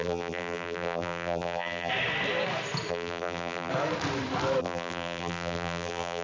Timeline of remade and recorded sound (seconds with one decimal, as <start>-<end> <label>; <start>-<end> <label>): 0.0-1.9 remade; 1.9-2.9 recorded; 2.9-3.7 remade; 3.7-4.6 recorded; 4.6-6.2 remade